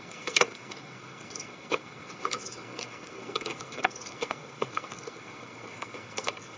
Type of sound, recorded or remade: remade